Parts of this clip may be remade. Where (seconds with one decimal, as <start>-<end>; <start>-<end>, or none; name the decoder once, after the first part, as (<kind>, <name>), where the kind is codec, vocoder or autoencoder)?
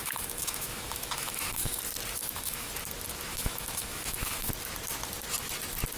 0.0-1.8 (autoencoder, DAC-VAE); 2.2-2.7; 3.3-4.5